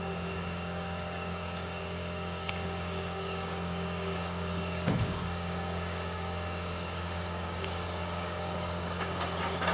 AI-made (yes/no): yes